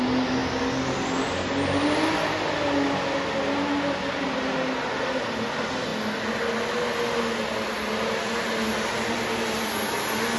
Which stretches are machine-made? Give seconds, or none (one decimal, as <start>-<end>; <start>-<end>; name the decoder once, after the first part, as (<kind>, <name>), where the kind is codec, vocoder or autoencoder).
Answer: none